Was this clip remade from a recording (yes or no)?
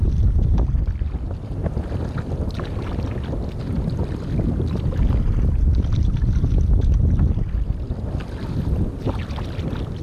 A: no